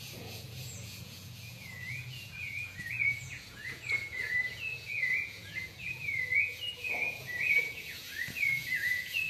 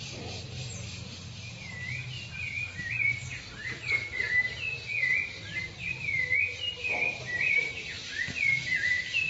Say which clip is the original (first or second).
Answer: second